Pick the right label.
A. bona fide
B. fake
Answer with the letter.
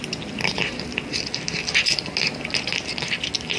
A